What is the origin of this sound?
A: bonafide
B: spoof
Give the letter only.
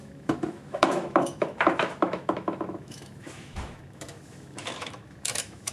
B